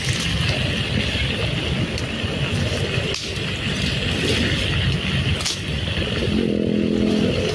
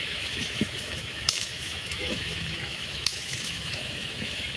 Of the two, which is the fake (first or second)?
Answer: second